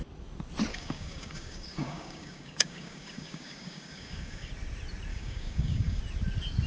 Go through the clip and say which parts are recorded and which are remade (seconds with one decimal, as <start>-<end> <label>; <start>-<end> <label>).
0.0-0.7 recorded; 0.7-4.5 remade; 4.5-5.1 recorded; 5.1-6.0 remade; 6.0-6.7 recorded